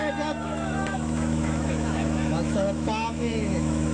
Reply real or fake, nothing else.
fake